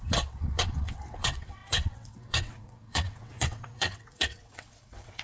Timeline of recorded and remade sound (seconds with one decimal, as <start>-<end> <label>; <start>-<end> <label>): 0.0-5.2 remade

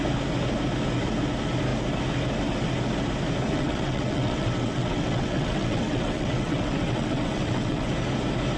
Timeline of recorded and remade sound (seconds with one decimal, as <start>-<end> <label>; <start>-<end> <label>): 0.0-3.5 recorded; 3.5-7.9 remade; 7.9-8.6 recorded

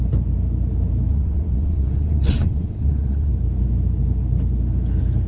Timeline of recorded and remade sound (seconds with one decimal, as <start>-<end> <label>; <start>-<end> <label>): 0.0-1.1 recorded; 1.1-3.3 remade; 3.3-5.3 recorded

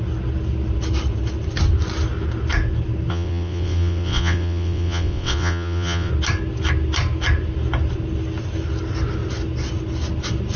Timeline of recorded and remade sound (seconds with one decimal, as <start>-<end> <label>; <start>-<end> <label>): 0.0-3.1 recorded; 3.1-6.1 remade; 6.1-10.6 recorded

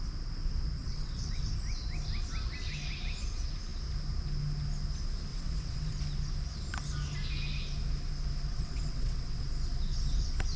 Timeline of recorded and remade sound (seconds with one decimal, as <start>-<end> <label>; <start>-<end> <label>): 0.0-0.8 recorded; 0.8-1.5 remade; 1.5-5.3 recorded; 5.3-5.9 remade; 5.9-8.5 recorded; 8.5-9.5 remade; 9.5-10.6 recorded

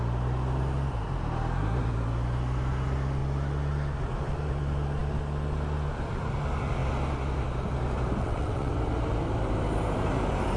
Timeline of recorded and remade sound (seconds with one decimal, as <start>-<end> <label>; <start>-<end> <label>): 0.0-8.2 recorded; 8.2-8.7 remade; 8.7-10.6 recorded

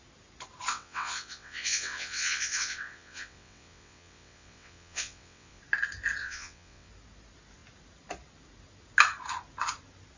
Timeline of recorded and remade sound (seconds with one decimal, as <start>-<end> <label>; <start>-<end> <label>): 0.0-0.7 recorded; 0.7-5.6 remade; 5.6-6.2 recorded; 6.2-6.9 remade; 6.9-10.2 recorded